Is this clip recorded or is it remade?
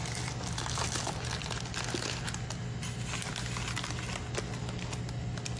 recorded